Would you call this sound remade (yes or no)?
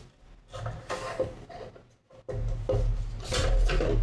no